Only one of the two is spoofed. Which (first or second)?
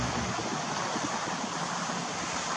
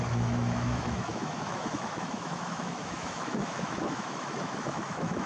second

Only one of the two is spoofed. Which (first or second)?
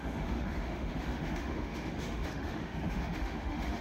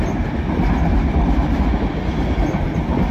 first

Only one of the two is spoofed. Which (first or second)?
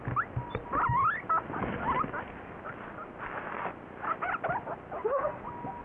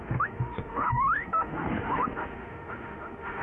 second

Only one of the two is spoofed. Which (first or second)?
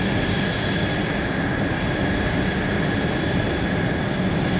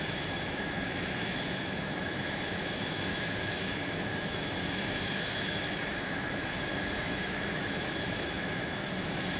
second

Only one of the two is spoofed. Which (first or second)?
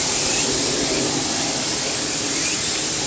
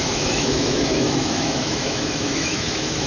second